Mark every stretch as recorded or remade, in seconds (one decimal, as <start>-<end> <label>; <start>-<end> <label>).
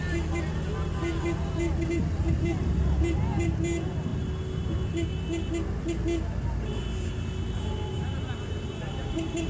0.0-9.5 recorded